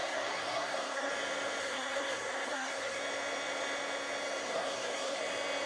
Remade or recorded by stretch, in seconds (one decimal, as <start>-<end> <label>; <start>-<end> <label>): 0.0-1.1 remade; 1.1-1.6 recorded; 1.6-3.0 remade; 3.0-4.4 recorded; 4.4-5.2 remade; 5.2-5.7 recorded